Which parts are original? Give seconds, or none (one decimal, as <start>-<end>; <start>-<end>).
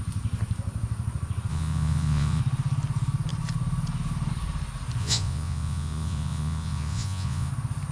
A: 0.0-1.5; 2.4-5.0; 7.5-7.9